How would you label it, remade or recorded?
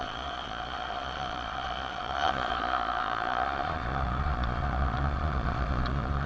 remade